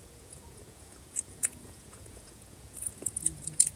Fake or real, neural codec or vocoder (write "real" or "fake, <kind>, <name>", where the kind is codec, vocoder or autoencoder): fake, vocoder, Vocos